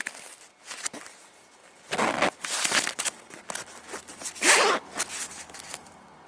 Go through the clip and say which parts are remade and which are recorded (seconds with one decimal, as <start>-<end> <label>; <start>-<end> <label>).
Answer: 0.0-6.3 recorded